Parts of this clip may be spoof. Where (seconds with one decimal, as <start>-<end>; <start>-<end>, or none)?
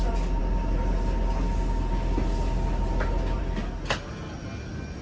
none